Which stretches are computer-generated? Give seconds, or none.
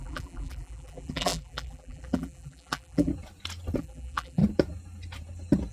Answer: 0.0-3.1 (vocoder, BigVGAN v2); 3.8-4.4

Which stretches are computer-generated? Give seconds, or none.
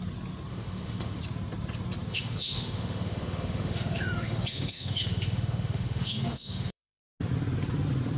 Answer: 0.5-1.2 (autoencoder, DAC-VAE); 2.1-7.0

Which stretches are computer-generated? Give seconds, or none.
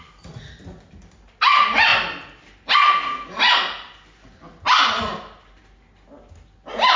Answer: none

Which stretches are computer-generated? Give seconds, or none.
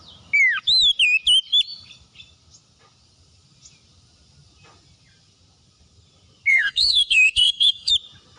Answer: 6.5-7.9 (codec, SNAC)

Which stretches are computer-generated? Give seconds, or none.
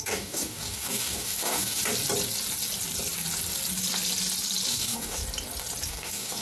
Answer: 0.0-1.8 (codec, DAC); 4.7-5.2; 5.9-6.4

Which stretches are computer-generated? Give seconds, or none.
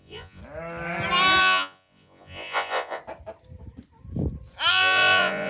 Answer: 0.0-0.4 (vocoder, Vocos); 1.4-3.0; 4.7-5.5